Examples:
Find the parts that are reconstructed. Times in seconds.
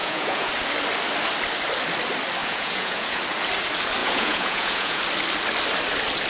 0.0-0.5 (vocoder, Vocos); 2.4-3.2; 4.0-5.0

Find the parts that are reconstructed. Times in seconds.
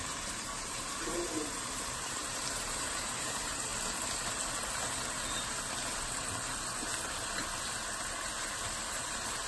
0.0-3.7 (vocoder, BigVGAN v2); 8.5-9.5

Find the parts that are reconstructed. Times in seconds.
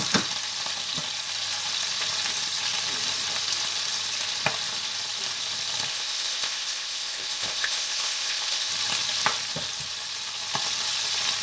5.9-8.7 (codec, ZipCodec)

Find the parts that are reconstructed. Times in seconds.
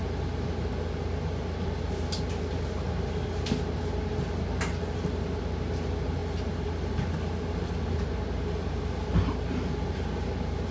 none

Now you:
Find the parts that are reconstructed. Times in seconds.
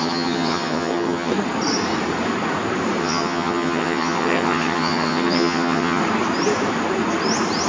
0.0-1.3 (vocoder, HiFi-GAN); 3.0-6.0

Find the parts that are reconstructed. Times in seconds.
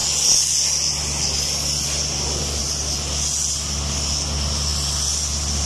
none